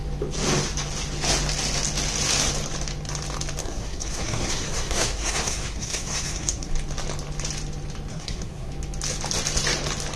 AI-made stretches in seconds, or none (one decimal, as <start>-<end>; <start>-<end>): 3.6-6.7; 8.1-8.7